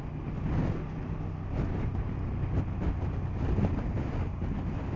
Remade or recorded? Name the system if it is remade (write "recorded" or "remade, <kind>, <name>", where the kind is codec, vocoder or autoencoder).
recorded